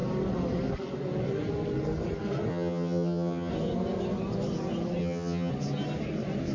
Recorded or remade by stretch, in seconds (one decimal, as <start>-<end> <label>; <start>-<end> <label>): 0.0-2.5 recorded; 2.5-3.5 remade; 3.5-5.0 recorded; 5.0-5.5 remade; 5.5-6.5 recorded